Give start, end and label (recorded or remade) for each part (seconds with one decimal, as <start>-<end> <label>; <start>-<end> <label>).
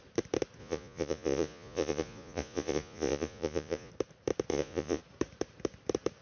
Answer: 0.0-0.6 recorded; 0.6-3.9 remade; 3.9-4.5 recorded; 4.5-5.0 remade; 5.0-6.2 recorded